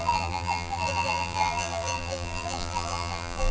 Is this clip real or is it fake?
fake